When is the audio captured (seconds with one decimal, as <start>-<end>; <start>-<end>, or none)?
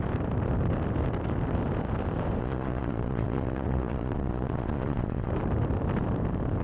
0.0-2.4; 5.3-6.6